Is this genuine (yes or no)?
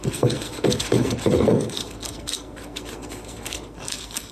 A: no